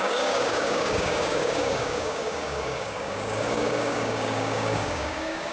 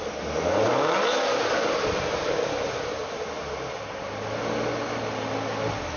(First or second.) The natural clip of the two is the second